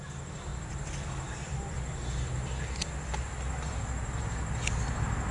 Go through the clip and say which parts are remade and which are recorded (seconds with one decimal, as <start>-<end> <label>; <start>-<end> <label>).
0.0-5.3 recorded